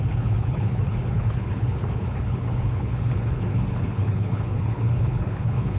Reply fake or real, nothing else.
fake